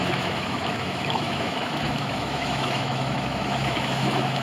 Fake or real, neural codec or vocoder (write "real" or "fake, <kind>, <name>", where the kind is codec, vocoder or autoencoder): fake, autoencoder, DAC-VAE